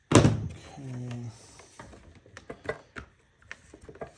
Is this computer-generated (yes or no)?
no